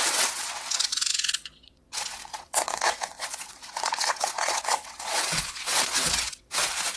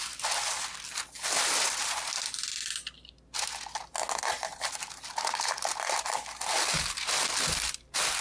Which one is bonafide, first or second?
second